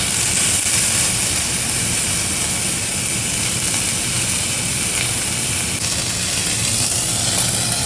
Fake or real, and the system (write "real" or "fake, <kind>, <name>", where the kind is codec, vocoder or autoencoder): real